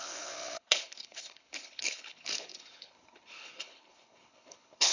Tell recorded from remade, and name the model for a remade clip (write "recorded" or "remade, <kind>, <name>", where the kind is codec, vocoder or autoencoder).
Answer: remade, codec, HILCodec